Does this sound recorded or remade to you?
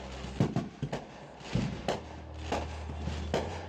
recorded